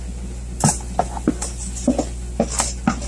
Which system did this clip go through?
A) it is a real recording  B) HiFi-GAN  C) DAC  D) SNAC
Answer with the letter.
A